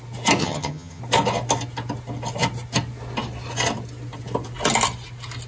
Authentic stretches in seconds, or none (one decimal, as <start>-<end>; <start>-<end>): 0.0-0.4; 1.0-5.5